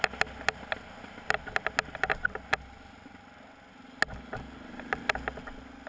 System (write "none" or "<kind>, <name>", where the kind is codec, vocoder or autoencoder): none